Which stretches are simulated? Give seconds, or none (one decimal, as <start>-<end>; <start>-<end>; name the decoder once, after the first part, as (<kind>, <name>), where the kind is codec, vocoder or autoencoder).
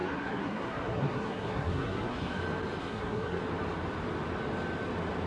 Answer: 0.0-2.4 (codec, SNAC); 2.8-3.4